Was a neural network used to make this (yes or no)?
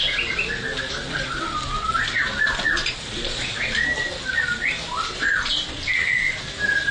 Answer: no